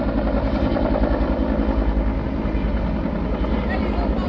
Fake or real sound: real